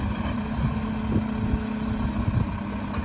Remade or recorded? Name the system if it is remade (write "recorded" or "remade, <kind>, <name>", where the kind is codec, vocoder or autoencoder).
recorded